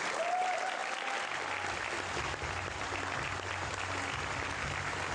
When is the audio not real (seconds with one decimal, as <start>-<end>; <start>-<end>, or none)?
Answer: none